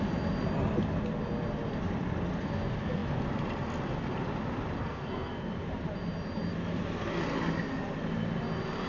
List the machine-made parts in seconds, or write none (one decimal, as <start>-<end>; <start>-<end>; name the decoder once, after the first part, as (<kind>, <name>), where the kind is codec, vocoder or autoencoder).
4.8-5.5 (codec, SNAC)